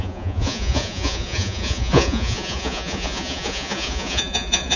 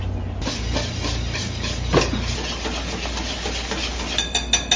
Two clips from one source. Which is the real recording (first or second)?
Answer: second